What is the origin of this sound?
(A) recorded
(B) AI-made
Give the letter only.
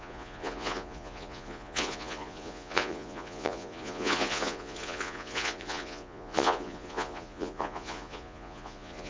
B